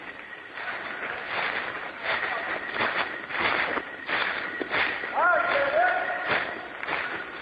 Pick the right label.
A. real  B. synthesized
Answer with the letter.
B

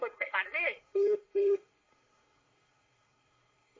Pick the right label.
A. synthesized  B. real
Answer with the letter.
A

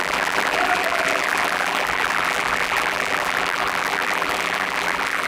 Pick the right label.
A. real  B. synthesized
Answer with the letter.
B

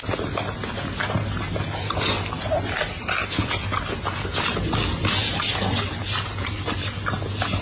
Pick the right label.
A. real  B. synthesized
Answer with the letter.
A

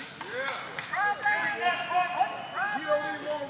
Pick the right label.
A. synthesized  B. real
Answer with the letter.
B